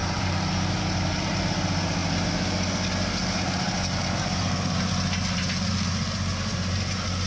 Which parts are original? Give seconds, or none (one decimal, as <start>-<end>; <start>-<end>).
1.4-7.3